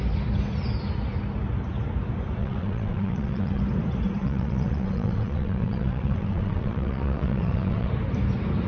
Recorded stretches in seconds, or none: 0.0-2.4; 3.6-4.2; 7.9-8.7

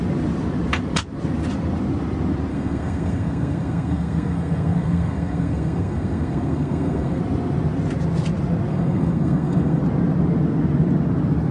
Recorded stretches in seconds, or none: 0.0-2.5; 7.2-8.7; 9.8-11.5

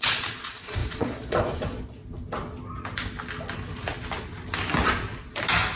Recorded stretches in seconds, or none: 2.0-5.8